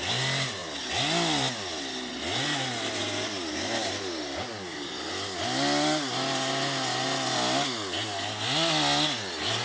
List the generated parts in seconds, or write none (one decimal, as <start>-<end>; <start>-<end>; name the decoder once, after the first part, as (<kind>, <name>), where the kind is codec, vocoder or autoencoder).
none